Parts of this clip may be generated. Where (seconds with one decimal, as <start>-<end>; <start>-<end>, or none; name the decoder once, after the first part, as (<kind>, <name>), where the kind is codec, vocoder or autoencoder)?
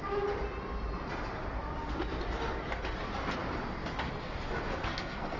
4.8-5.4 (codec, SNAC)